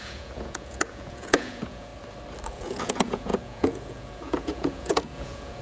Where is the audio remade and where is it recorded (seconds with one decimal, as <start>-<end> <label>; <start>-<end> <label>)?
0.0-1.9 remade; 1.9-2.5 recorded; 2.5-5.6 remade